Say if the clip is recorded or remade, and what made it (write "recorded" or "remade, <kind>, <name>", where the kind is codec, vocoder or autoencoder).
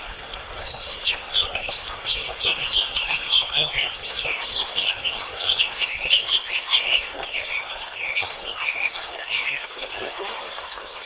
remade, codec, SNAC